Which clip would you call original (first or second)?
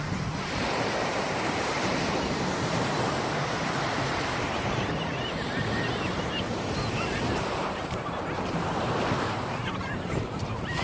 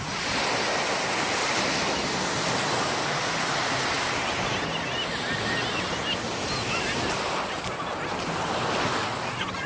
second